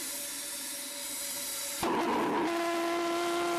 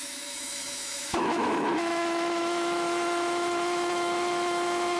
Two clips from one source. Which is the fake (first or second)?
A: second